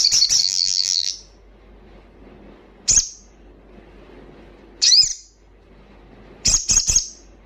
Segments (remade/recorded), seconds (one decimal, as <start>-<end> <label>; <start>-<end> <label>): 0.0-0.4 recorded; 0.4-1.1 remade; 1.1-7.5 recorded